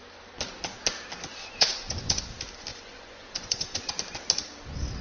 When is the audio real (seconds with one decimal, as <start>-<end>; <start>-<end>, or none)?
0.0-1.4; 2.2-2.7; 3.9-5.0